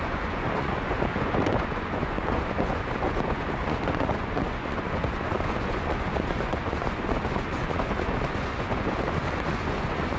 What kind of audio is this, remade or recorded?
remade